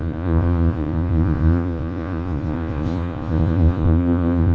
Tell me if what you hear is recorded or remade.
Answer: remade